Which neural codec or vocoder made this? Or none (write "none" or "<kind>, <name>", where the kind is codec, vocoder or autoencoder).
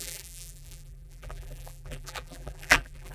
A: vocoder, BigVGAN v2